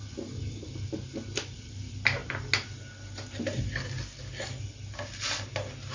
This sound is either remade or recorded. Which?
recorded